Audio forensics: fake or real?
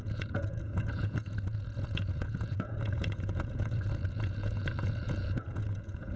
fake